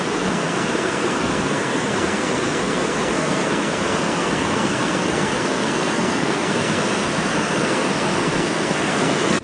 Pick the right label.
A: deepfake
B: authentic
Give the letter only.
A